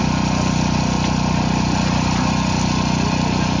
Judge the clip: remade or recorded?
recorded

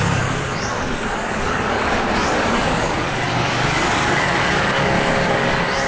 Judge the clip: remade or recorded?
remade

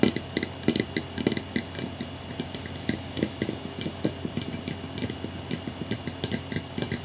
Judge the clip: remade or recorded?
recorded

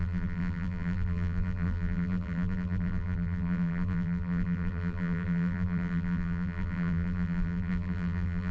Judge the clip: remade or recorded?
remade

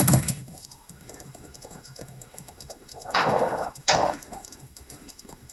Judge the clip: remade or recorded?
remade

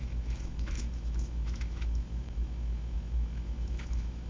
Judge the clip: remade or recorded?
remade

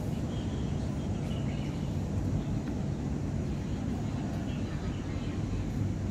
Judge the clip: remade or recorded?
recorded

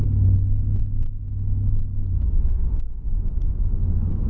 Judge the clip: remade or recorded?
recorded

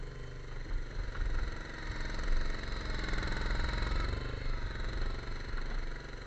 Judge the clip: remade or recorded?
recorded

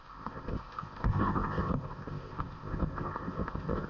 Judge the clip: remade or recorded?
remade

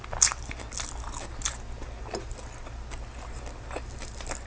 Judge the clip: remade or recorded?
recorded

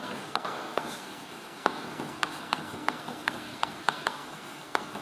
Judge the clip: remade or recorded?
remade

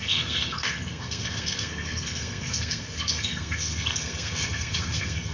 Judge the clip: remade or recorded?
remade